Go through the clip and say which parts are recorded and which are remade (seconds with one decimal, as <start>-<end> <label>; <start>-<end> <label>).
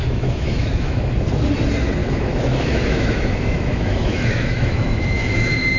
0.0-1.1 remade; 1.1-2.0 recorded; 2.0-5.8 remade